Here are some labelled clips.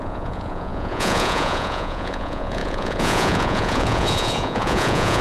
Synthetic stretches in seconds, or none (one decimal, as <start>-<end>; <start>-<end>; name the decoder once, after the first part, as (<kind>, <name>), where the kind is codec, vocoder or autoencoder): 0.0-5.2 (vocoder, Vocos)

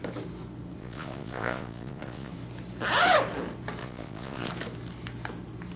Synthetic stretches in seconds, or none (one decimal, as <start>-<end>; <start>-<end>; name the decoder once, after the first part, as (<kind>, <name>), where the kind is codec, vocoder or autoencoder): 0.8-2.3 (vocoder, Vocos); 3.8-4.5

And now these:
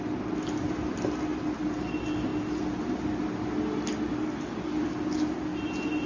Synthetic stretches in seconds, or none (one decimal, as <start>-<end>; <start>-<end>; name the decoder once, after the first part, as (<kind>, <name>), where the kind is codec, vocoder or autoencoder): none

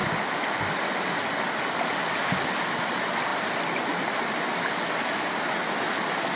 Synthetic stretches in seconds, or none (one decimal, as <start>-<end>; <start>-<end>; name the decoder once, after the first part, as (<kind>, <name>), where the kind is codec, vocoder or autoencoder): none